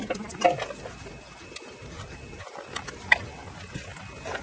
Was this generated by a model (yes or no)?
no